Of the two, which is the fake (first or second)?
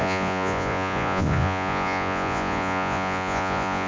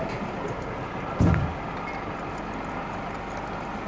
first